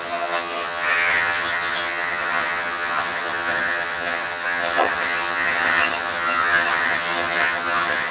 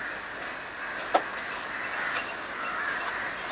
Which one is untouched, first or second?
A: second